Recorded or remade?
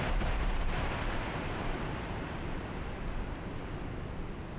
recorded